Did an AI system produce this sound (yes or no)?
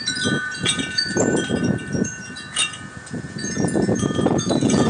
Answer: yes